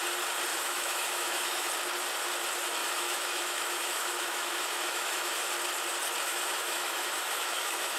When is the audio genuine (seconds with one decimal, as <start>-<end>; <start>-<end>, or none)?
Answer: 0.0-0.5; 1.7-2.8; 5.4-6.3